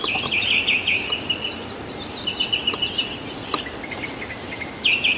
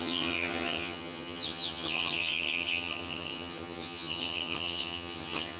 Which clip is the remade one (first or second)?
second